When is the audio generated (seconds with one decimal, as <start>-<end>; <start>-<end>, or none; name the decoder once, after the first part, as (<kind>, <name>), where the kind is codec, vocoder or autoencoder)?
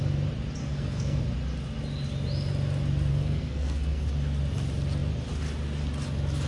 0.6-1.2 (codec, SNAC); 3.1-4.1